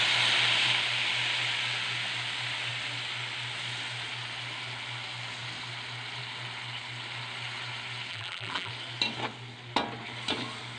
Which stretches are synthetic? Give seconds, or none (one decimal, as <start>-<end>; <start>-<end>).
8.1-8.7